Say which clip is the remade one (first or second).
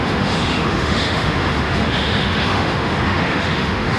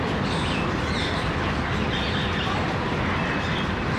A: first